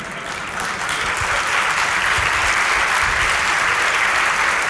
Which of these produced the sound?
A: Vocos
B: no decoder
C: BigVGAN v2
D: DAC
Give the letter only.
B